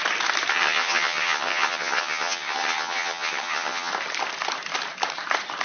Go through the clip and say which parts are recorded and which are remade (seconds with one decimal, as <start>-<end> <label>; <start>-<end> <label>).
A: 0.0-0.5 recorded; 0.5-3.9 remade; 3.9-5.6 recorded